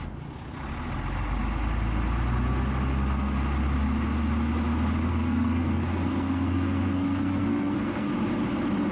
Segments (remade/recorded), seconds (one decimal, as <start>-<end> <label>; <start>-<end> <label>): 0.0-5.1 recorded; 5.1-8.1 remade; 8.1-8.9 recorded